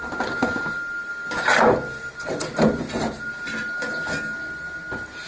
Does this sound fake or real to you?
real